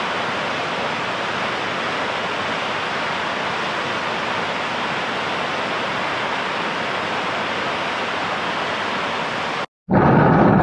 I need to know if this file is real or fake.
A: real